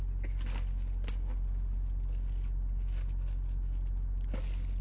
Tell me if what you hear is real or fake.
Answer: real